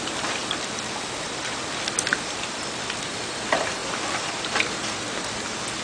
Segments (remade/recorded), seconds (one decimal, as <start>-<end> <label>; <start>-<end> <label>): 0.0-0.4 remade; 0.4-1.9 recorded; 1.9-3.8 remade; 3.8-5.8 recorded